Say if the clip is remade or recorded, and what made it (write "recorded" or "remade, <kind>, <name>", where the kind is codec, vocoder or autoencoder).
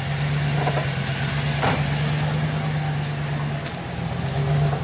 recorded